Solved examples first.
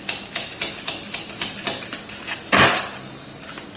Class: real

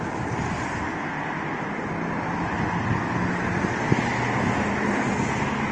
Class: real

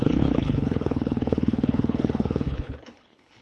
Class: fake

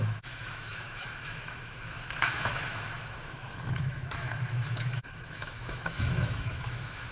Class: fake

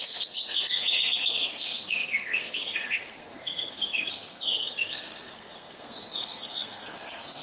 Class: fake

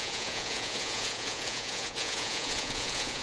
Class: fake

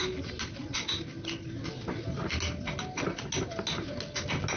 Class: real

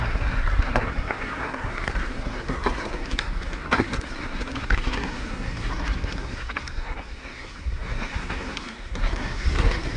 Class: fake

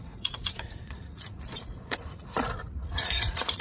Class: fake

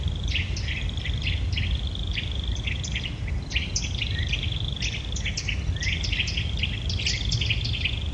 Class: real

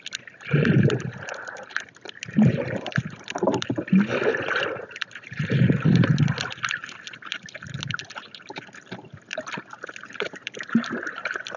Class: real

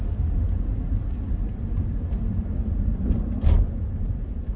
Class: real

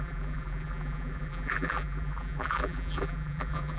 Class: fake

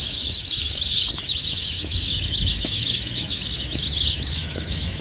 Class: fake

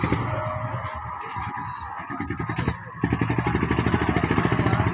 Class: real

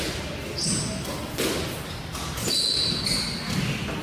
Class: real